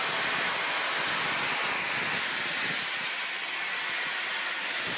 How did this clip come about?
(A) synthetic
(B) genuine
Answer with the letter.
B